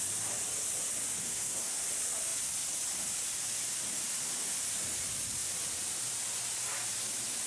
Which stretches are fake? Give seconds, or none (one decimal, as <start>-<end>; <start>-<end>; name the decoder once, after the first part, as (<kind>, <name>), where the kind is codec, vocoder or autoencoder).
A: 1.2-1.8 (codec, SNAC)